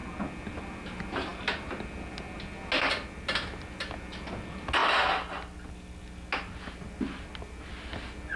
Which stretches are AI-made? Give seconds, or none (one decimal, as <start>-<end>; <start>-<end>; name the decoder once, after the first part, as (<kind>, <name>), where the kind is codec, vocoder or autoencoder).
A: none